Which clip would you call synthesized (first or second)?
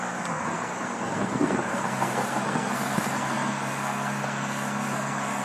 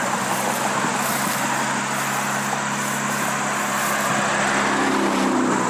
first